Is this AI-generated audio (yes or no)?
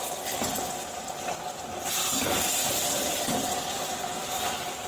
no